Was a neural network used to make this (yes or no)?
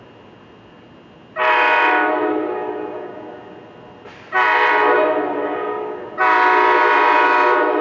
no